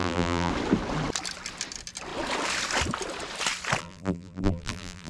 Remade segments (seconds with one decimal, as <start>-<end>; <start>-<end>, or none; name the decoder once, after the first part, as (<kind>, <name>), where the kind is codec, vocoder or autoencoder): 0.0-0.5 (vocoder, BigVGAN v2); 3.8-5.1